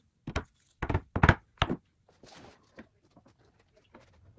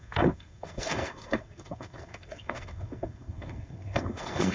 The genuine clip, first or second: first